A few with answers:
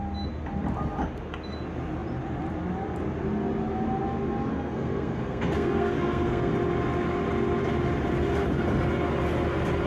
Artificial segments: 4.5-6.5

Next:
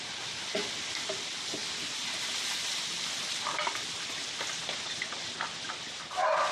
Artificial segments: none

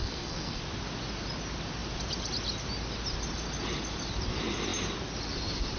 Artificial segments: 0.0-0.6

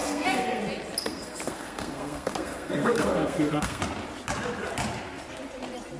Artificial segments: 0.0-0.6; 1.0-3.8

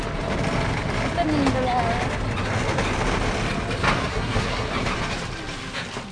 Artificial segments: 4.0-4.7

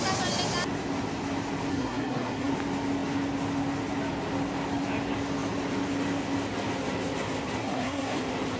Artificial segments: 1.7-2.5; 7.6-8.2

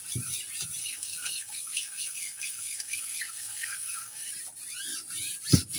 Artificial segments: 0.8-4.3

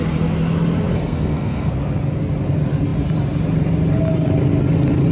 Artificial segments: 0.9-1.7